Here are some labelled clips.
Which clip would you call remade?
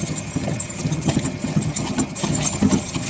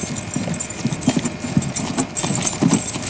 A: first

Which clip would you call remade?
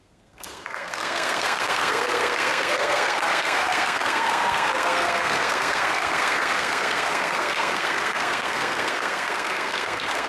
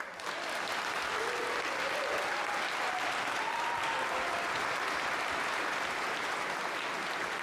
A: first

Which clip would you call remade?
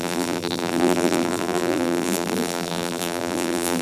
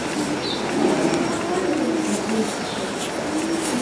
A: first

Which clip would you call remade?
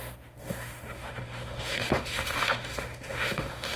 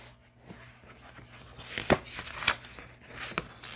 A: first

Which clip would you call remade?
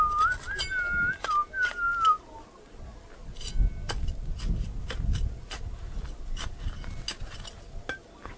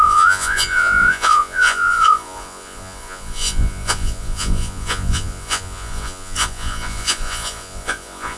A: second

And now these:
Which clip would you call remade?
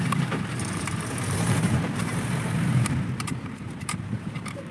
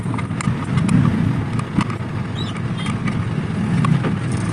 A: first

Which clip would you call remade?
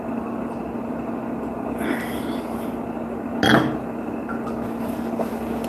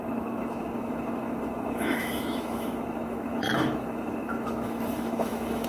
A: second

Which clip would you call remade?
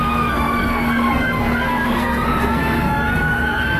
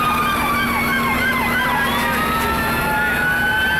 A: first